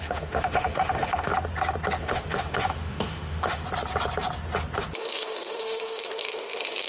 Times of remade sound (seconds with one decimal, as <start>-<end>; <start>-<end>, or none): 0.0-1.3; 2.0-3.6; 5.0-6.9